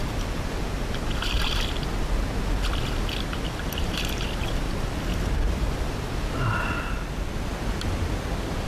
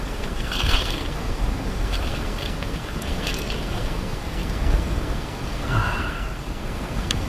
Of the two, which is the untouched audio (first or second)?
first